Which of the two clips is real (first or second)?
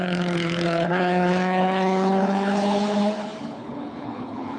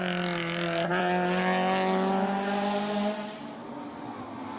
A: second